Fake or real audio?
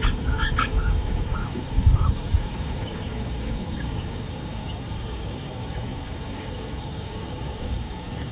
fake